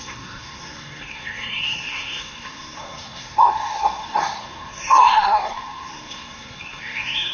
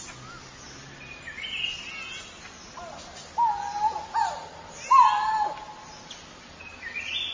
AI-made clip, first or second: first